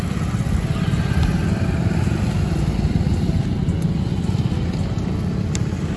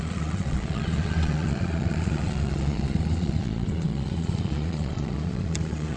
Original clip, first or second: first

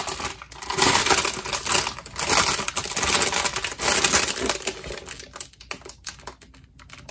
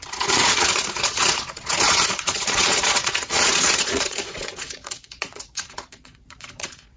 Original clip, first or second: first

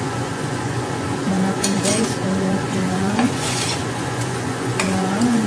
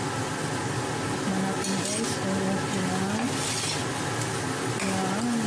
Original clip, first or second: second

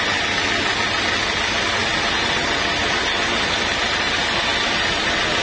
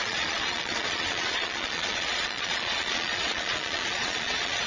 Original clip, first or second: first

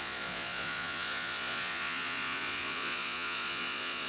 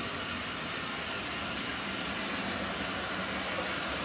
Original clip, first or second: second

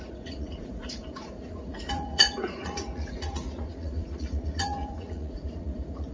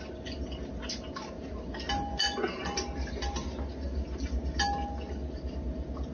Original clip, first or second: second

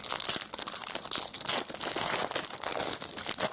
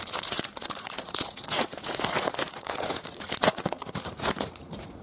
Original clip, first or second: first